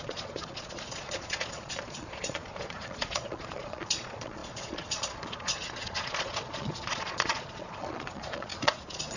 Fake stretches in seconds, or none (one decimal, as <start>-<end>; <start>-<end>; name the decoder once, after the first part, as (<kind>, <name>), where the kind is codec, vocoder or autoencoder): 0.0-9.2 (vocoder, Vocos)